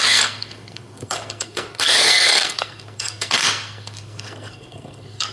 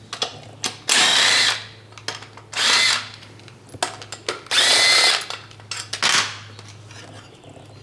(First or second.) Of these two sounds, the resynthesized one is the first